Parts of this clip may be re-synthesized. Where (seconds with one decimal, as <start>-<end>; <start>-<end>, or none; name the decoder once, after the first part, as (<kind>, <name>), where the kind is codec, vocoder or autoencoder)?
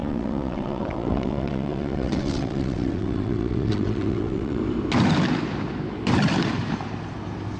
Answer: 0.0-4.6 (vocoder, WaveNeXt)